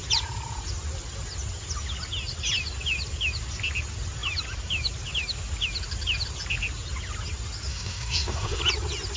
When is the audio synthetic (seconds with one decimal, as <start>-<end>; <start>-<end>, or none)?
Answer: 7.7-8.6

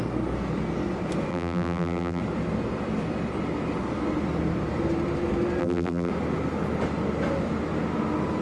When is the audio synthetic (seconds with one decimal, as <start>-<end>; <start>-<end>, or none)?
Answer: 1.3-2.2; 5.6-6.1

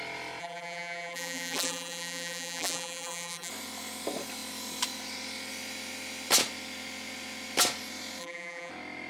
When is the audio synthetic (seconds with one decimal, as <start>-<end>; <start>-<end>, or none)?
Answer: 0.4-3.5; 8.2-8.7

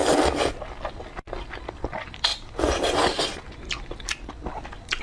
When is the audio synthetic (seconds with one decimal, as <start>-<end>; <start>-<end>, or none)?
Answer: none